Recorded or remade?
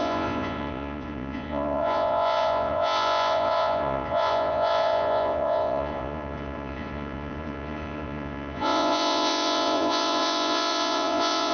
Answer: remade